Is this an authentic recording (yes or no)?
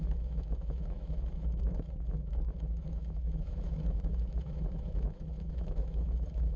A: no